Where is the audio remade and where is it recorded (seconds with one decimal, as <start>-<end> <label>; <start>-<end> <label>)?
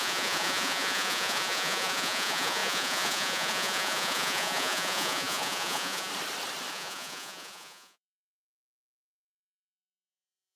0.0-6.1 remade; 6.1-6.7 recorded; 6.7-10.6 remade